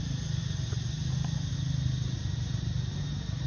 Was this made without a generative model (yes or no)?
yes